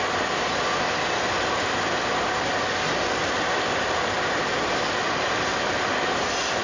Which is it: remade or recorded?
recorded